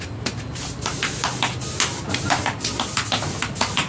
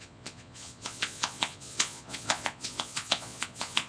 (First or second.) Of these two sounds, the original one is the first